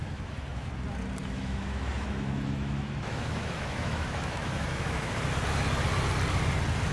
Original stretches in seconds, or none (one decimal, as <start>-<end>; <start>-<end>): 0.7-1.2; 5.2-6.9